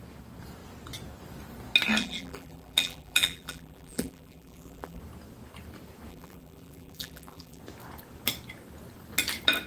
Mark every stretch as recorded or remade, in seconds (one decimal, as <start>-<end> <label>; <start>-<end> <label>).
0.0-2.0 recorded; 2.0-5.0 remade; 5.0-6.1 recorded; 6.1-7.6 remade; 7.6-9.7 recorded